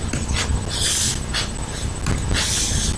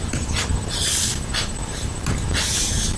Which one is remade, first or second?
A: second